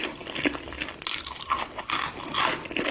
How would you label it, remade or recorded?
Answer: recorded